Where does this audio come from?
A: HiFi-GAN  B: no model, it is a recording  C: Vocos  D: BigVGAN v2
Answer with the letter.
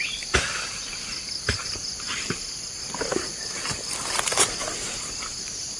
D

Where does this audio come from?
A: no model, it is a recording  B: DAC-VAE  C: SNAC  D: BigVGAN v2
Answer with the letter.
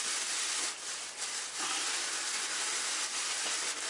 A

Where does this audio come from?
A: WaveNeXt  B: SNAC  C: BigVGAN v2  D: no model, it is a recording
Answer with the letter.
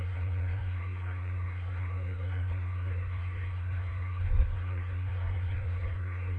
B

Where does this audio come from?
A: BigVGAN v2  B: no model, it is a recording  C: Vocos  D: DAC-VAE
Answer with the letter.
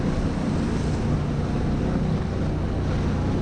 B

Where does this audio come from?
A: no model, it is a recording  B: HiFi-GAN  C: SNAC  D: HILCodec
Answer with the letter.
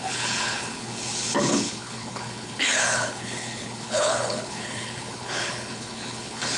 D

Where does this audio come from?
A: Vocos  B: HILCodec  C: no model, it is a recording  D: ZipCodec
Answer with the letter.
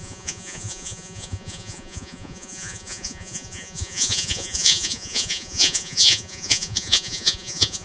A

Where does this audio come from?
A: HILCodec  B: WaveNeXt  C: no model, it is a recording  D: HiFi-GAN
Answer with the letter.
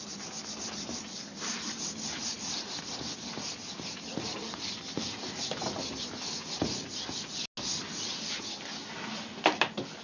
C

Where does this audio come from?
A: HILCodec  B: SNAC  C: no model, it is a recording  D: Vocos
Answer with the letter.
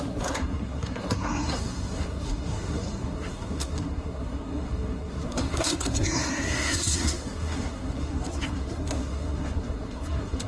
B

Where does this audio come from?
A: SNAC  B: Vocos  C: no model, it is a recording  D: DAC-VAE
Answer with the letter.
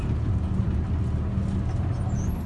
C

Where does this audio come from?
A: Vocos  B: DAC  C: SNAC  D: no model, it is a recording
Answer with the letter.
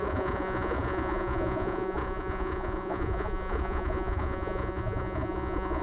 A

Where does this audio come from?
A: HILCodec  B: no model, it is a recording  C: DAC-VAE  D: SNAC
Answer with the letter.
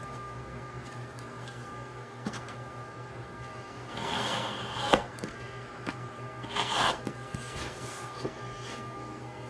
D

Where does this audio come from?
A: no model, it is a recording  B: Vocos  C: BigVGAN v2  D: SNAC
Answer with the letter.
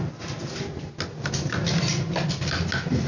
A